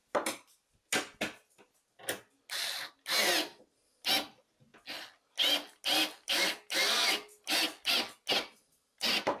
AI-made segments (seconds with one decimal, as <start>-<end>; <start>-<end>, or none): none

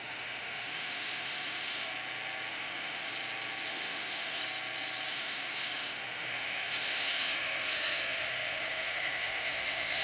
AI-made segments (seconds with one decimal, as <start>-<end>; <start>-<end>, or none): 0.0-1.9; 2.5-3.1; 3.7-4.4; 5.1-10.0

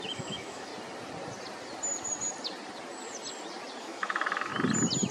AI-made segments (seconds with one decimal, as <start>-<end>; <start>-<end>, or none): 0.0-0.7; 3.8-4.5

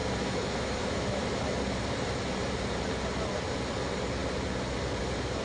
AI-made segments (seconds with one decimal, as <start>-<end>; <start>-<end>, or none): 0.0-1.2

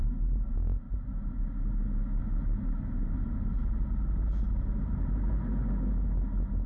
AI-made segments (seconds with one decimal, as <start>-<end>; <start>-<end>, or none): none

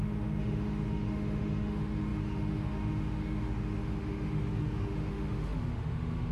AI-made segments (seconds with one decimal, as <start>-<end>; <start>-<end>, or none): 0.0-6.3